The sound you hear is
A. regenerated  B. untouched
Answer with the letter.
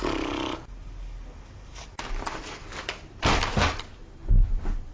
B